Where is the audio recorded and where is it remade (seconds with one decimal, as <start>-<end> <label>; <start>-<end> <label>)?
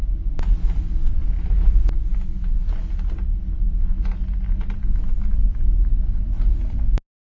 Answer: 0.0-7.3 recorded